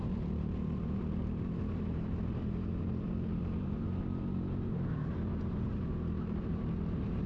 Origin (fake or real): fake